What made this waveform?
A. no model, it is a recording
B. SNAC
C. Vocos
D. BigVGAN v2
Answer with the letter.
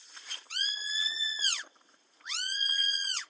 C